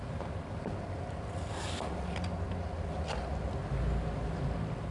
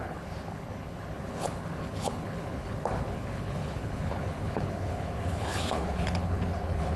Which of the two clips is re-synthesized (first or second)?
second